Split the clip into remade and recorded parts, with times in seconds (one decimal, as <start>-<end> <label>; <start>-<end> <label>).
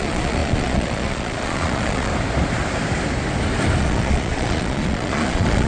0.0-2.1 remade; 2.1-3.8 recorded; 3.8-5.7 remade